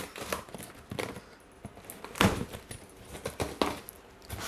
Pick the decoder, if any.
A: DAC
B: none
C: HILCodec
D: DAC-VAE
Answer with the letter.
B